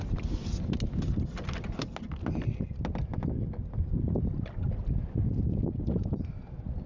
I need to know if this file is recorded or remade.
recorded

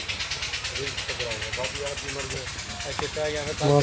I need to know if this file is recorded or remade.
recorded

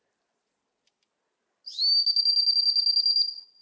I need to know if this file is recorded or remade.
recorded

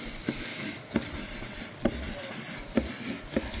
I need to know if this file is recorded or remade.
recorded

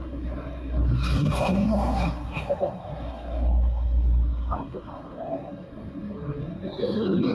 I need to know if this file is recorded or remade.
remade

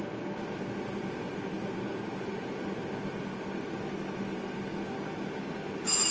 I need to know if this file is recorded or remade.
recorded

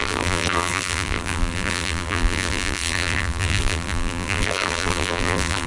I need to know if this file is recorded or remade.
remade